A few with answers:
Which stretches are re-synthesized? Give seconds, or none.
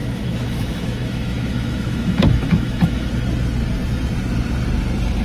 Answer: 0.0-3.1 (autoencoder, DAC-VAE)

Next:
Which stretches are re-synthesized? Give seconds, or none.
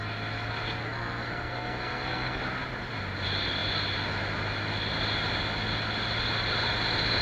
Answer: 0.8-2.4 (codec, SNAC)